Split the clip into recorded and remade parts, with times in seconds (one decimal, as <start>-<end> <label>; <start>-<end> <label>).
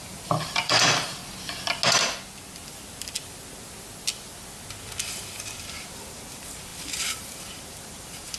0.0-1.2 remade; 1.2-5.4 recorded; 5.4-8.4 remade